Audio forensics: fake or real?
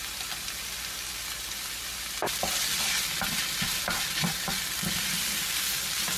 real